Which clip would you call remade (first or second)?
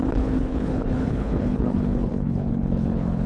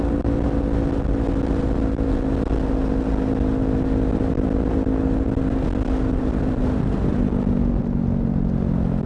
first